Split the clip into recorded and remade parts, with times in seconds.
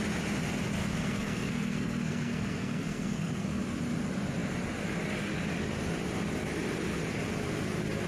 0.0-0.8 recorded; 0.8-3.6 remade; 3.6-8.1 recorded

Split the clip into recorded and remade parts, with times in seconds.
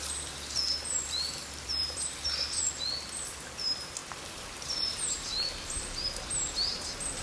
0.0-1.4 recorded; 1.4-2.2 remade; 2.2-4.0 recorded; 4.0-6.1 remade; 6.1-7.2 recorded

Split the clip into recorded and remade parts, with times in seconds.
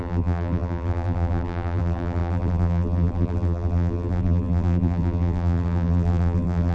0.0-6.7 remade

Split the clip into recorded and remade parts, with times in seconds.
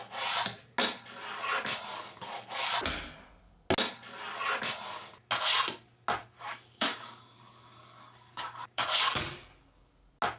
0.0-1.9 recorded; 1.9-2.7 remade; 2.7-6.2 recorded; 6.2-9.9 remade; 9.9-10.4 recorded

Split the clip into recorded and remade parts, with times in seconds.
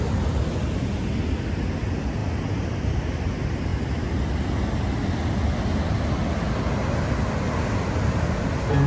0.0-8.9 recorded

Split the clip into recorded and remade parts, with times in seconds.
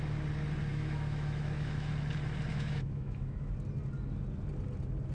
0.0-0.7 recorded; 0.7-1.9 remade; 1.9-2.5 recorded; 2.5-3.5 remade; 3.5-5.1 recorded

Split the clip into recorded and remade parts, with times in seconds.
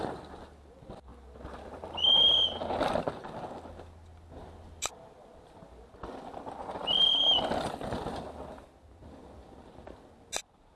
0.0-10.8 recorded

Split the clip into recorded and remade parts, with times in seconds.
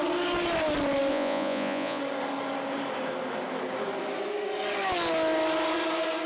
0.0-1.1 recorded; 1.1-2.0 remade; 2.0-6.3 recorded